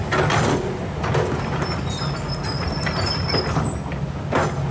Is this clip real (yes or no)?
yes